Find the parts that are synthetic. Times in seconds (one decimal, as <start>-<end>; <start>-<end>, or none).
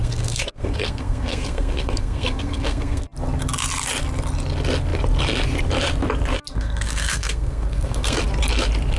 0.0-3.0; 6.5-8.2